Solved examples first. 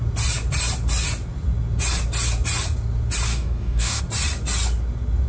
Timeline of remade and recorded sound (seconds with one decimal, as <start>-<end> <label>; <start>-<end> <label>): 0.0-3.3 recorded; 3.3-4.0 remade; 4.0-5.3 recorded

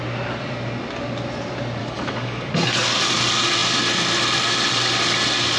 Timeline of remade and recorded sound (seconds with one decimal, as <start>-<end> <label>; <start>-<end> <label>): 0.0-1.8 recorded; 1.8-2.5 remade; 2.5-5.6 recorded

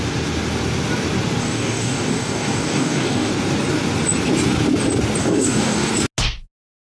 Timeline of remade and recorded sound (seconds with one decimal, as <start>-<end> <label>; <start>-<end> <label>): 0.0-1.4 recorded; 1.4-3.3 remade; 3.3-5.2 recorded; 5.2-5.9 remade; 5.9-6.8 recorded